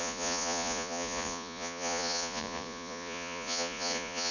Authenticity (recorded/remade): remade